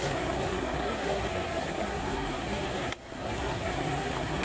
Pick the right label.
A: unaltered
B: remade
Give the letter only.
B